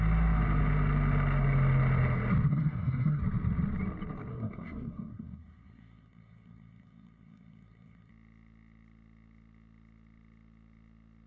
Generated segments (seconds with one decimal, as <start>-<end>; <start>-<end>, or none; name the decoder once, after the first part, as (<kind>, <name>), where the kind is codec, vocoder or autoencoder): 2.5-3.2 (codec, SNAC); 4.3-8.1